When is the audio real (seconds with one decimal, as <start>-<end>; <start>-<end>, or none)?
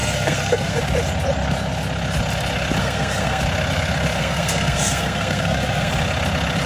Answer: 0.8-2.8; 3.4-4.2; 5.9-6.7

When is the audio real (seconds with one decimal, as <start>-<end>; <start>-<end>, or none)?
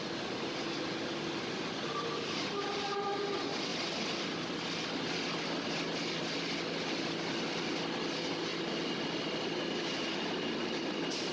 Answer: 0.0-11.3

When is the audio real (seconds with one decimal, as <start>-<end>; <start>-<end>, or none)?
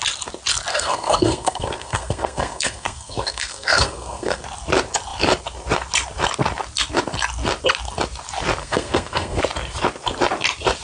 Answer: 0.0-0.7; 4.4-8.6; 9.4-10.8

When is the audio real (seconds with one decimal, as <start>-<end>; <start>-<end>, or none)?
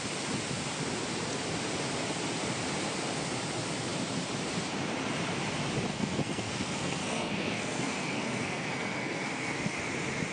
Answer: 0.0-5.9; 9.8-10.3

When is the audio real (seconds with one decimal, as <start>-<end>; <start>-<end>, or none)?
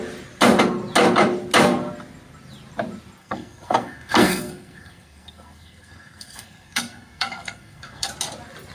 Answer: 0.0-3.2; 8.1-8.7